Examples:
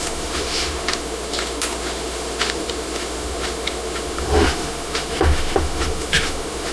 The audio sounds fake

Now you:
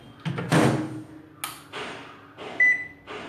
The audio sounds real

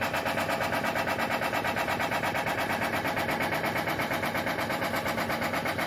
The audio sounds real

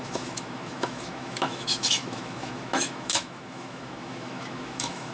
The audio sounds fake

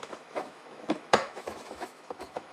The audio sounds fake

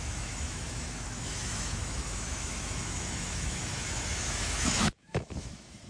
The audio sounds fake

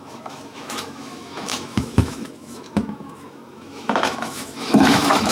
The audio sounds fake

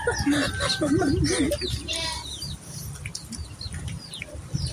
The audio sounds real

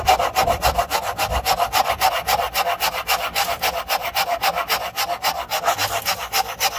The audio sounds real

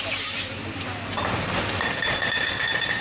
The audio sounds real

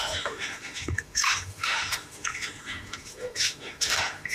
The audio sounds fake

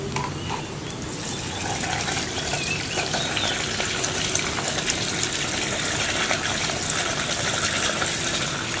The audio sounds real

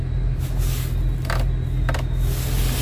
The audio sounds real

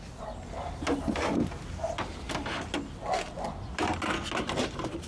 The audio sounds real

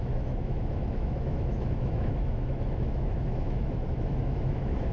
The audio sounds fake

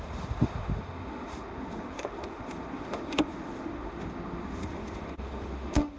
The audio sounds fake